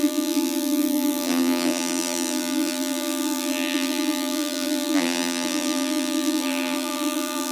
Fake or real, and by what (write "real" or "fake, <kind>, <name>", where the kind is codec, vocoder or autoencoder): fake, vocoder, BigVGAN v2